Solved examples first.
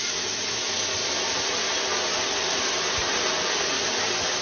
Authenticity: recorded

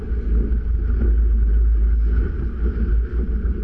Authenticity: recorded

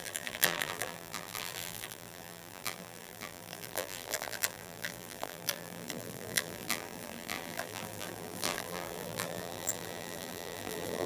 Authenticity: remade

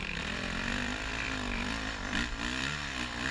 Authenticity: remade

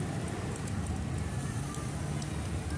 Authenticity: remade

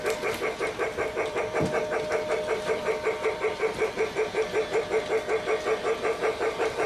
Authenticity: remade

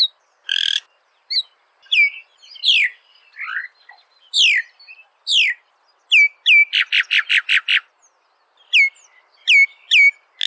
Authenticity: recorded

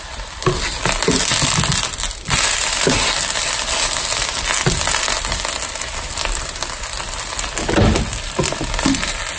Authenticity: recorded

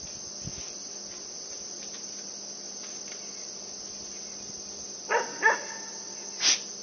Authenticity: recorded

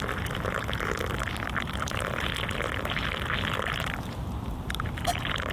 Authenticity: remade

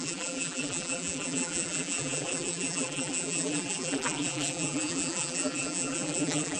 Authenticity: remade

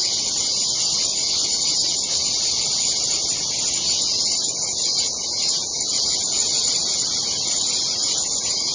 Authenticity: recorded